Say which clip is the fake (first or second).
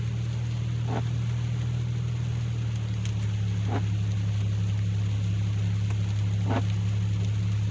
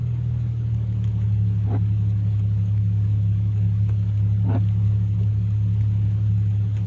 second